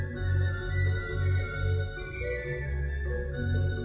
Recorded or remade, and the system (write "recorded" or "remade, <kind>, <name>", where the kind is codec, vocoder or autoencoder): recorded